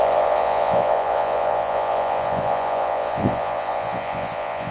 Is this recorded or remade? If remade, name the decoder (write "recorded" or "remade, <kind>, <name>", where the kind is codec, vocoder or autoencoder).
remade, vocoder, Vocos